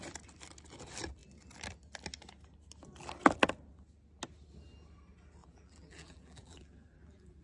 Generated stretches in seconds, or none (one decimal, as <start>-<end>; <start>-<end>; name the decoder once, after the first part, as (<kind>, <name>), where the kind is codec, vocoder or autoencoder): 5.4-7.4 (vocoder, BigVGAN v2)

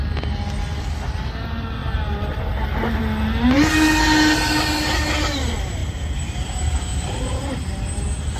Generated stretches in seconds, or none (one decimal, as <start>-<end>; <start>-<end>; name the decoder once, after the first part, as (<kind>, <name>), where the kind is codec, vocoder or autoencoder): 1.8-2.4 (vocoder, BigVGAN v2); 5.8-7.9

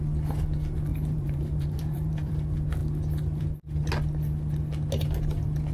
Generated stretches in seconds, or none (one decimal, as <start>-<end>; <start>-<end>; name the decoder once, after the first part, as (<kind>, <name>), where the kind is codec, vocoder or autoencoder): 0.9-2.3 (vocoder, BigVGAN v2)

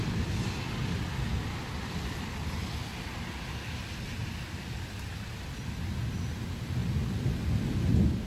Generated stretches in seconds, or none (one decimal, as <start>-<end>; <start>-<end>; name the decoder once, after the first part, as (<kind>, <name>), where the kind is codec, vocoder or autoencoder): 1.3-2.7 (vocoder, BigVGAN v2); 4.2-5.3; 6.8-7.4